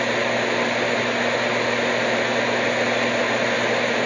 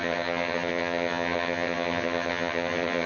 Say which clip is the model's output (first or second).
second